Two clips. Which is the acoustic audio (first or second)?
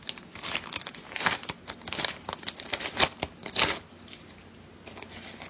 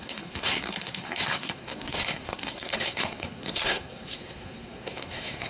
first